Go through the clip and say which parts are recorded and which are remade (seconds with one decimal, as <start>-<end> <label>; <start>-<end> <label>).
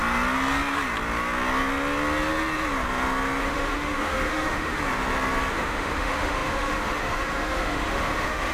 0.0-3.4 recorded; 3.4-4.8 remade; 4.8-5.5 recorded; 5.5-8.5 remade